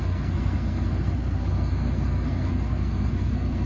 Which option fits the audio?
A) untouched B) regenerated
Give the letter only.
B